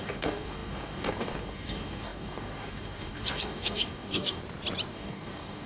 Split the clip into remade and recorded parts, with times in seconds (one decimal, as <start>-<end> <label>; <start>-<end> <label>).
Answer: 0.0-4.4 remade; 4.4-4.9 recorded; 4.9-5.7 remade